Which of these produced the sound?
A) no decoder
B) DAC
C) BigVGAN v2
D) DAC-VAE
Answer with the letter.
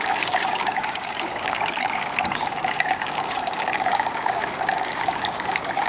B